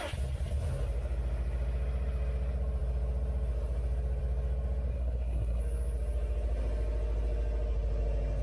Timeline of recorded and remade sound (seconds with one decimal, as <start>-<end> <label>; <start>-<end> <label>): 0.0-4.9 recorded; 4.9-5.6 remade; 5.6-8.4 recorded